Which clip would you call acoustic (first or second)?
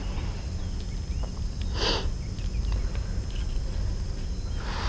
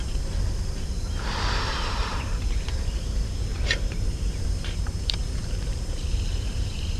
first